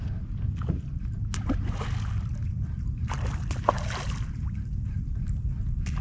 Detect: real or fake real